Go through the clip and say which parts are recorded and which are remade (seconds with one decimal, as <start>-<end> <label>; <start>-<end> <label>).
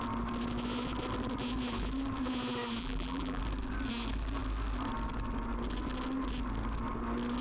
0.0-2.8 recorded; 2.8-3.4 remade; 3.4-7.4 recorded